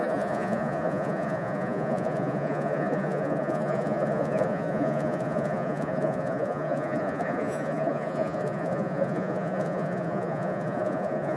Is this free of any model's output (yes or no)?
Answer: no